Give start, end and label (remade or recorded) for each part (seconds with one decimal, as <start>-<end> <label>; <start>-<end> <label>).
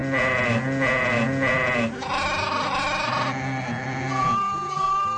0.0-5.2 recorded